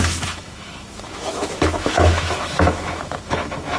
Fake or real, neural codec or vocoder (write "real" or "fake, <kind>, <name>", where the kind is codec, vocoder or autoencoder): fake, autoencoder, DAC-VAE